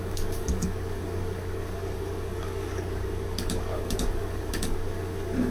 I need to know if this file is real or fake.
fake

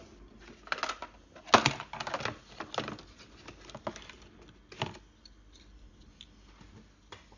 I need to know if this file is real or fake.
real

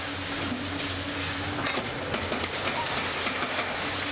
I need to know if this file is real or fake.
real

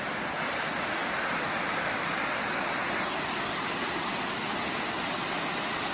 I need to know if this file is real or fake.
real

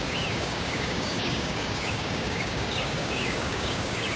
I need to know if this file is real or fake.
fake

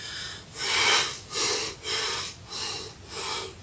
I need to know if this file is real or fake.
real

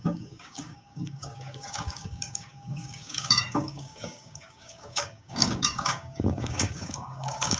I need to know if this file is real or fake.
fake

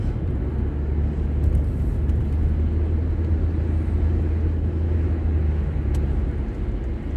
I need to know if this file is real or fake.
real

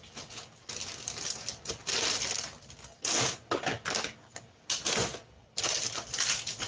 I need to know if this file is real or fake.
real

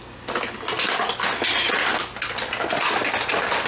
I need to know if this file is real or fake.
real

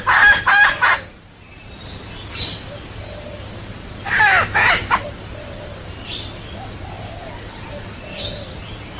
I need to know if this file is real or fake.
real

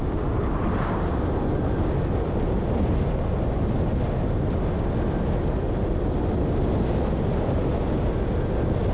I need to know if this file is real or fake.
real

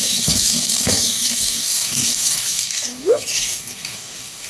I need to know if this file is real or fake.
fake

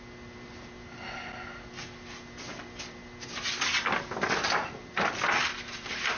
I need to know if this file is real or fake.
real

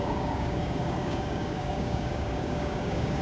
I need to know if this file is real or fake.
fake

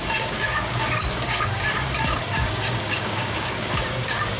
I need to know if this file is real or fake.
fake